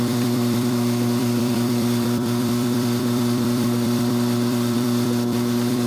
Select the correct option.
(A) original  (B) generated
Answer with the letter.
B